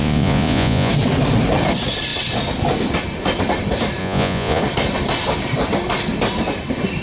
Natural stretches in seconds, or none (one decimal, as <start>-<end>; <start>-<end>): 0.9-4.0; 4.6-7.0